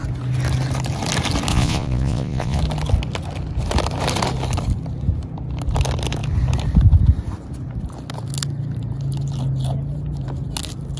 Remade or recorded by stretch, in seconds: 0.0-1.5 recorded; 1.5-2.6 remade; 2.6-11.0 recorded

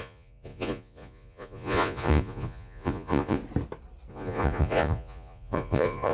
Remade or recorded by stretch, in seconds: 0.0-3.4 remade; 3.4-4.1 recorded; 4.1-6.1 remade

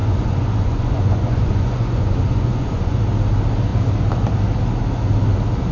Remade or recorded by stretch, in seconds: 0.0-3.0 remade; 3.0-5.7 recorded